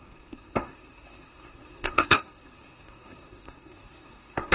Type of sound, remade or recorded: remade